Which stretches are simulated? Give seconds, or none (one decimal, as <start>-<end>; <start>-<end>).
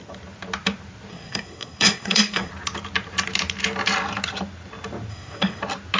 1.1-2.5; 5.1-5.6